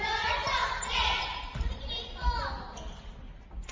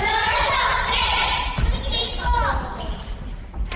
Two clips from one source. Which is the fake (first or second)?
second